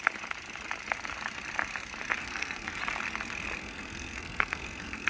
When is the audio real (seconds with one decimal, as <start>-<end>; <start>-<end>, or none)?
0.0-2.2; 2.8-3.6